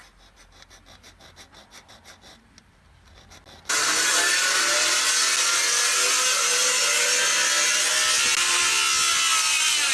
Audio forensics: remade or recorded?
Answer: recorded